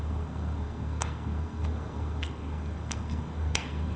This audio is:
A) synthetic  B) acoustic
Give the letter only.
A